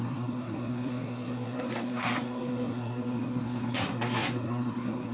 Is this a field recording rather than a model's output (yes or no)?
no